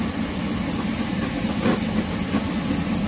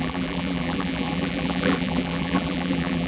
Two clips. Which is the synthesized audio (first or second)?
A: second